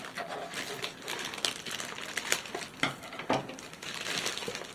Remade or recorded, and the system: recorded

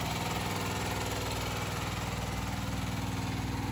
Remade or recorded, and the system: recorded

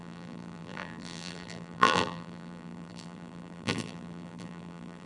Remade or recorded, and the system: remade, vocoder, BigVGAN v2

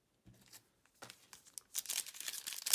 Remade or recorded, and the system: recorded